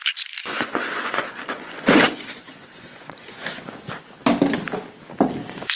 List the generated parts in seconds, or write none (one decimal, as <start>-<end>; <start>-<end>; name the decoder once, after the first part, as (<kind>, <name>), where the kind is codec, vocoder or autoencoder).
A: 0.4-3.9 (vocoder, Vocos)